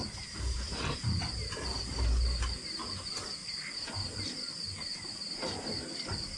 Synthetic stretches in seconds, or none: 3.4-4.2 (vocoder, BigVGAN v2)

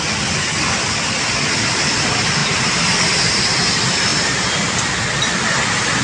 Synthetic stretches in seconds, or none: 2.4-2.9 (vocoder, BigVGAN v2); 4.1-5.0

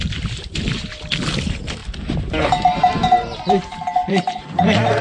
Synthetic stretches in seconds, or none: 0.0-1.8 (vocoder, BigVGAN v2); 3.0-5.0